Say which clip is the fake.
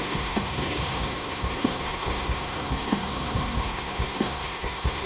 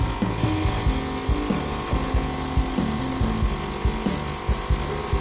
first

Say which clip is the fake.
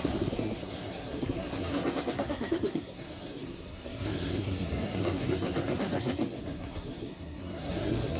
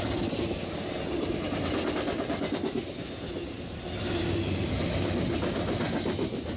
first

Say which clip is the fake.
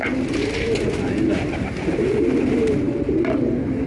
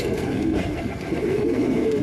second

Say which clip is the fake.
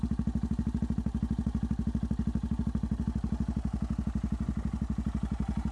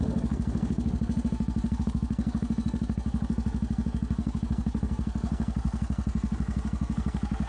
second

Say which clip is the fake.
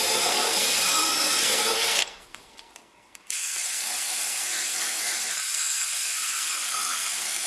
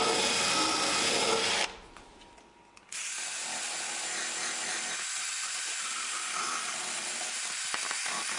first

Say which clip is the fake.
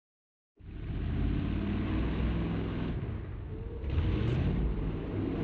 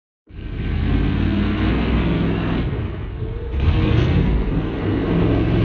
second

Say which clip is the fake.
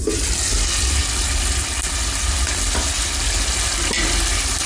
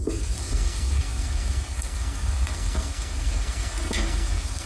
second